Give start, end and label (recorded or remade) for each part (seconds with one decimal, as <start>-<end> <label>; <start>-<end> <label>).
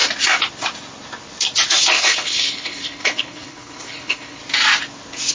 0.0-1.9 recorded; 1.9-4.4 remade; 4.4-5.3 recorded